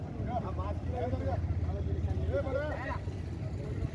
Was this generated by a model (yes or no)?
no